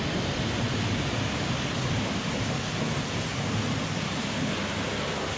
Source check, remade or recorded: recorded